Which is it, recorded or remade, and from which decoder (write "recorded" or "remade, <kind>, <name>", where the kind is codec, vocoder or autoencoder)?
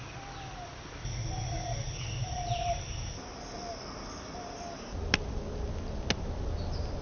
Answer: recorded